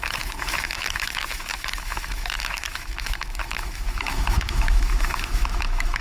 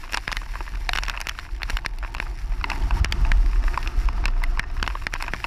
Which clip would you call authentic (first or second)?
second